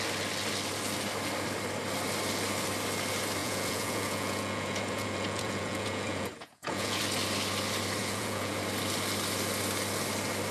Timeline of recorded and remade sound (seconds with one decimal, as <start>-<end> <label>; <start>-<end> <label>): 0.0-3.4 recorded; 3.4-7.0 remade; 7.0-8.0 recorded; 8.0-8.5 remade; 8.5-10.5 recorded